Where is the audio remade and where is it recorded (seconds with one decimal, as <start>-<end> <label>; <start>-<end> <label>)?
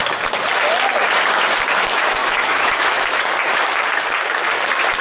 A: 0.0-2.2 recorded; 2.2-3.2 remade; 3.2-5.0 recorded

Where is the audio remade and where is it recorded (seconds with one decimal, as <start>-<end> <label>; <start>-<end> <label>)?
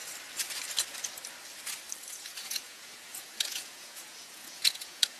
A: 0.0-2.1 recorded; 2.1-5.2 remade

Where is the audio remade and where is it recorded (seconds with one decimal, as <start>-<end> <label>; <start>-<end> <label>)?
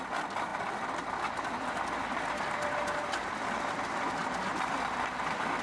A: 0.0-5.6 recorded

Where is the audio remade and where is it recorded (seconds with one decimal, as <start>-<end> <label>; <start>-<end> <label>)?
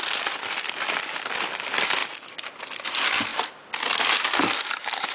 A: 0.0-5.1 recorded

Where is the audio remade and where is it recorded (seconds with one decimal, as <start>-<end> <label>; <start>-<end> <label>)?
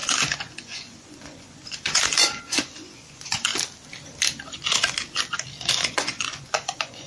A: 0.0-3.5 remade; 3.5-5.7 recorded; 5.7-7.1 remade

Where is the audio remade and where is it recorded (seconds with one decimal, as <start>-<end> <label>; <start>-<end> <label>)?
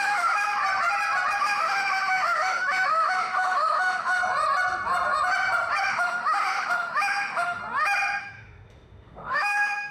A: 0.0-0.6 remade; 0.6-1.4 recorded; 1.4-4.2 remade; 4.2-5.9 recorded; 5.9-7.6 remade; 7.6-8.2 recorded; 8.2-9.9 remade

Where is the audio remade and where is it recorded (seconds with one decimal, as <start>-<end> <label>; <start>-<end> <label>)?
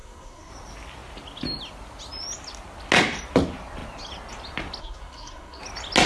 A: 0.0-0.5 remade; 0.5-4.8 recorded; 4.8-5.6 remade; 5.6-6.1 recorded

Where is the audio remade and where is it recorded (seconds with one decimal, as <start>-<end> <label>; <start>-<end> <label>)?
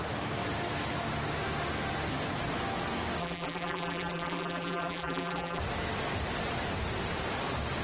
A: 0.0-3.2 recorded; 3.2-5.6 remade; 5.6-7.8 recorded